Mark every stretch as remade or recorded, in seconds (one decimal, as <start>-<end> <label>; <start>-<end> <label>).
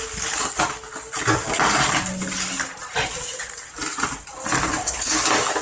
0.0-4.6 recorded; 4.6-5.1 remade; 5.1-5.6 recorded